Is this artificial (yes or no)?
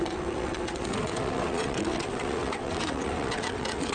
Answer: yes